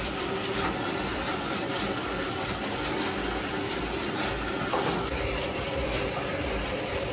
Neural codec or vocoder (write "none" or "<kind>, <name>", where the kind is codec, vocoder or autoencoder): vocoder, BigVGAN v2